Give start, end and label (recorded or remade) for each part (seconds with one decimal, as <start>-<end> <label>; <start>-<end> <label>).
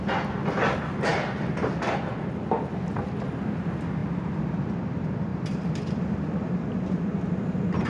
0.0-1.1 recorded; 1.1-2.0 remade; 2.0-5.3 recorded; 5.3-7.0 remade; 7.0-7.9 recorded